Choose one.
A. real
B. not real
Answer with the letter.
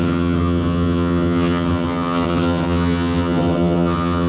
B